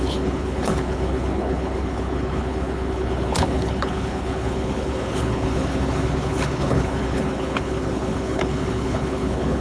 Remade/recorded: remade